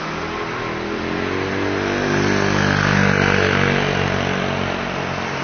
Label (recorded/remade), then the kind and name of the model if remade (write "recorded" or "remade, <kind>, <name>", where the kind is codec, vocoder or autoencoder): recorded